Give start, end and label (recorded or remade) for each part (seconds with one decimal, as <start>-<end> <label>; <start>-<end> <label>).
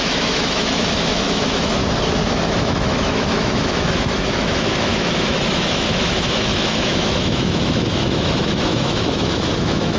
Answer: 0.0-1.8 remade; 1.8-2.3 recorded; 2.3-10.0 remade